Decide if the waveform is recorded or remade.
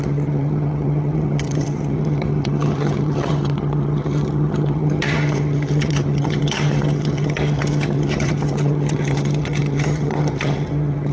remade